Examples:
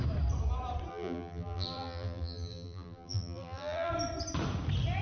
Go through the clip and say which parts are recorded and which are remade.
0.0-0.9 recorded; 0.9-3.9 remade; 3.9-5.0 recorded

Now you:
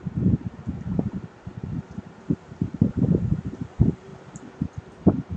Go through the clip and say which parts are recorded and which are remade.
0.0-4.1 remade; 4.1-5.4 recorded

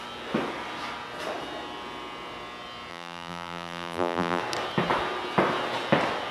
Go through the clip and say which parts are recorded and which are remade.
0.0-2.9 recorded; 2.9-4.4 remade; 4.4-6.3 recorded

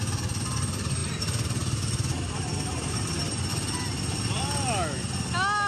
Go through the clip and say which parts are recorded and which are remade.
0.0-5.7 recorded

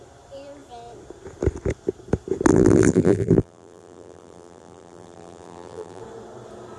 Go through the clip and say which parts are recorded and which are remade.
0.0-2.5 recorded; 2.5-6.0 remade; 6.0-6.8 recorded